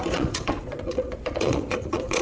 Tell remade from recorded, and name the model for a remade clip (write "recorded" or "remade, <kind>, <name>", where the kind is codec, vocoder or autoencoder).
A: remade, vocoder, Vocos